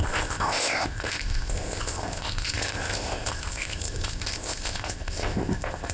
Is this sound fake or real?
fake